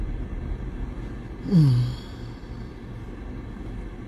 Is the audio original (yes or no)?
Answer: yes